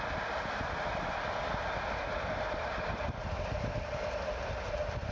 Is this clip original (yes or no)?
yes